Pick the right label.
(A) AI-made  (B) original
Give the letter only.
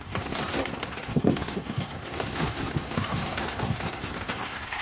A